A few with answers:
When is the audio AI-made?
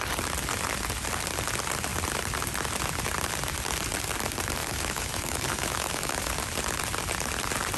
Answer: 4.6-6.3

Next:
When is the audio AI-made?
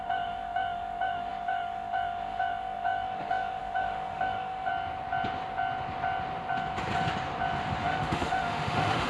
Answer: 0.0-4.7; 7.8-9.1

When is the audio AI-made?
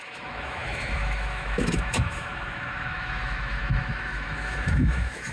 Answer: 0.0-5.3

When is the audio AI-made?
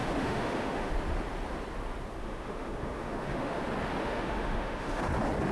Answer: 0.0-0.9; 2.2-3.6; 4.0-5.1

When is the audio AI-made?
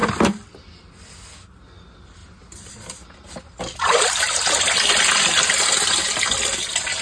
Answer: none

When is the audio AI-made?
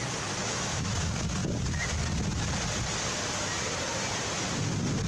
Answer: 0.4-0.9